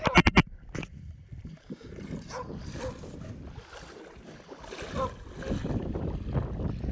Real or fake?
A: real